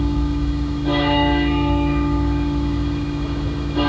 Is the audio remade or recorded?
remade